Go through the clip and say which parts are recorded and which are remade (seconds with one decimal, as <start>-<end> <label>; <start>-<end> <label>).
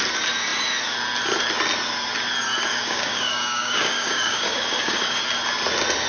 0.0-2.7 recorded; 2.7-5.2 remade; 5.2-6.1 recorded